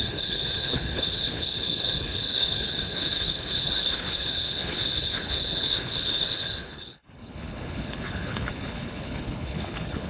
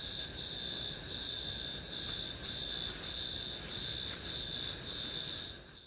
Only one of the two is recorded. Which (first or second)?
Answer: second